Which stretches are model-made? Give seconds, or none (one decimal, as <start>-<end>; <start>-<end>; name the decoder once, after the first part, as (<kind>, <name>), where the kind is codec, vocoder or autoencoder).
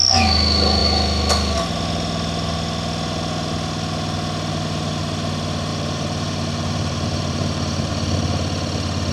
5.7-7.9 (vocoder, BigVGAN v2)